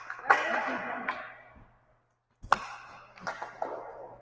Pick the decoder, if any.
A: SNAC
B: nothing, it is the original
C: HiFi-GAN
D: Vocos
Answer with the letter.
B